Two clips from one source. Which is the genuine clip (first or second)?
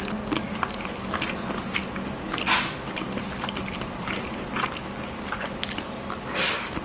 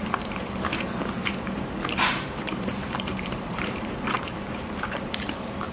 first